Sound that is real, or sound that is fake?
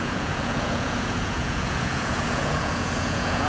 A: fake